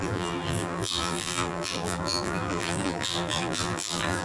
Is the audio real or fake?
fake